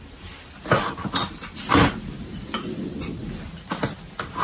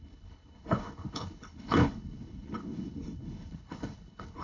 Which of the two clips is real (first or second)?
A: first